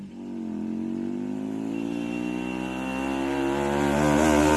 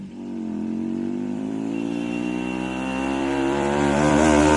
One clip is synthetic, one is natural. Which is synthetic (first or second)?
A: second